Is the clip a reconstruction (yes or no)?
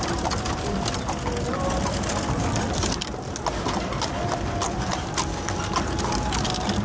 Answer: no